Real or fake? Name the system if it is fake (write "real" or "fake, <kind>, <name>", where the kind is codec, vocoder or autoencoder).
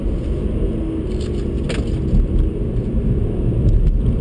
real